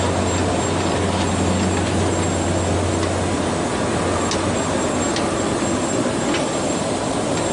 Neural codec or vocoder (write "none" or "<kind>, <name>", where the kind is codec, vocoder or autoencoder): none